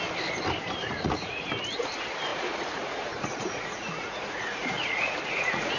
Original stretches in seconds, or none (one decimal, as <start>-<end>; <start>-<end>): 0.0-0.8; 1.5-2.3